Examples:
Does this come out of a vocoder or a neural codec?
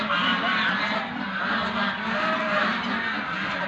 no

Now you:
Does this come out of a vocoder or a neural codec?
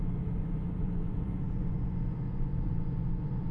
yes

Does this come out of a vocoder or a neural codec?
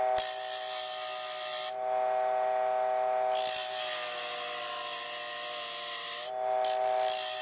no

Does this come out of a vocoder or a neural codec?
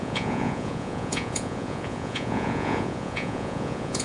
yes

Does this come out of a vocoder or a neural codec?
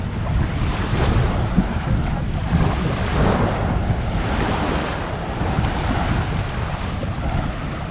no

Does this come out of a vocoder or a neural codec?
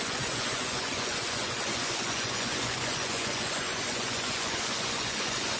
yes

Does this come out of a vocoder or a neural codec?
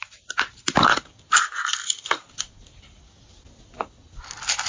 no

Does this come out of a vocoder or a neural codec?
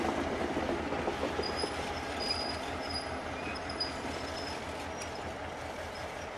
no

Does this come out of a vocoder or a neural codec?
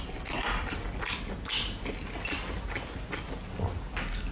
no